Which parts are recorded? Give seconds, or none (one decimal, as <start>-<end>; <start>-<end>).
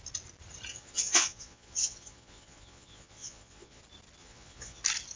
0.0-0.7; 3.8-4.2; 4.8-5.2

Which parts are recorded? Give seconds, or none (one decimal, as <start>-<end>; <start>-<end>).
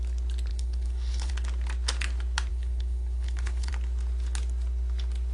0.0-0.5; 1.3-2.5; 3.7-5.3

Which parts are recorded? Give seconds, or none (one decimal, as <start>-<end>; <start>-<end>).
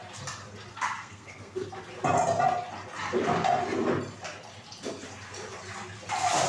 0.0-0.7; 1.7-6.5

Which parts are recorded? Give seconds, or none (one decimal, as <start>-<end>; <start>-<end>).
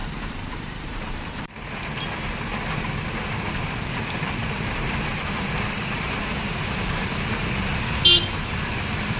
2.0-4.4; 7.5-9.2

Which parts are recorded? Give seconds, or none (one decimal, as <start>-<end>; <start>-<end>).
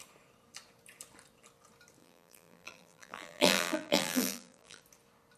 0.0-2.0; 4.8-5.4